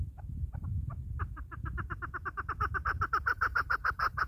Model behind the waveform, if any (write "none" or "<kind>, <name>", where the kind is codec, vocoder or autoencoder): vocoder, BigVGAN v2